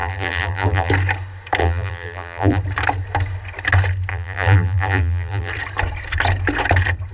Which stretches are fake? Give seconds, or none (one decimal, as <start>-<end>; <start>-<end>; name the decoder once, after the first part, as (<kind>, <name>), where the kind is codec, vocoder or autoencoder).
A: 0.0-0.9 (vocoder, BigVGAN v2); 1.6-2.6; 4.1-5.5